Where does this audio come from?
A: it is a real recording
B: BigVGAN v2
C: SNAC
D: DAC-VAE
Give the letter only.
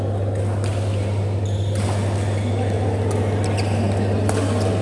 A